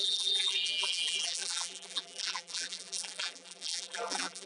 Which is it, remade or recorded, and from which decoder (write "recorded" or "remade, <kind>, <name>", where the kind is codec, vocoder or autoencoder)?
remade, vocoder, BigVGAN v2